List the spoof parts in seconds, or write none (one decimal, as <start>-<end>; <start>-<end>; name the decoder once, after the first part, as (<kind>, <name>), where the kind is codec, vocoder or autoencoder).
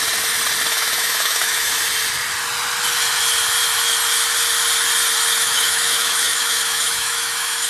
0.7-1.7 (autoencoder, DAC-VAE); 5.4-7.7